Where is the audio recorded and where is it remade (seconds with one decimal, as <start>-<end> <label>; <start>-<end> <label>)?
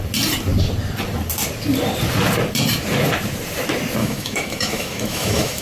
0.0-4.0 recorded; 4.0-5.6 remade